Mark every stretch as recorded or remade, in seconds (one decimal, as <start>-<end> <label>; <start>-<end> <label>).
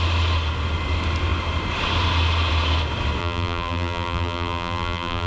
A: 0.0-3.2 recorded; 3.2-5.3 remade